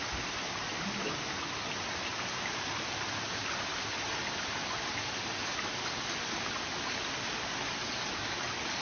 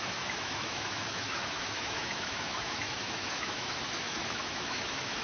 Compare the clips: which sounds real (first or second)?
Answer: first